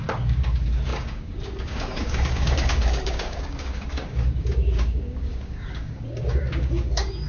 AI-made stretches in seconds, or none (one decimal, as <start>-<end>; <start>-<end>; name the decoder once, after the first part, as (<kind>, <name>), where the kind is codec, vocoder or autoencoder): 0.0-7.3 (codec, DAC)